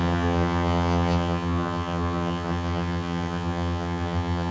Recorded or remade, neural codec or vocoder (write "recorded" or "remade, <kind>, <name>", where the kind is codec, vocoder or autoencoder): remade, vocoder, HiFi-GAN